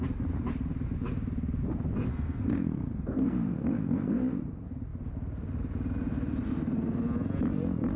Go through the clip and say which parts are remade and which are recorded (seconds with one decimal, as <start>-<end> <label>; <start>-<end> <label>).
0.0-2.1 recorded; 2.1-4.2 remade; 4.2-8.0 recorded